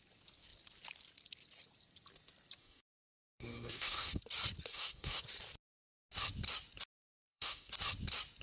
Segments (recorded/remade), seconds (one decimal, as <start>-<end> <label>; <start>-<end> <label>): 0.0-2.6 recorded; 2.6-4.2 remade; 4.2-4.7 recorded; 4.7-5.2 remade; 5.2-7.0 recorded; 7.0-7.7 remade; 7.7-8.4 recorded